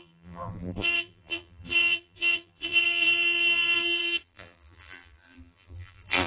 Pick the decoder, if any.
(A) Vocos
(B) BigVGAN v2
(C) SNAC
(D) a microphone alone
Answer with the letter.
B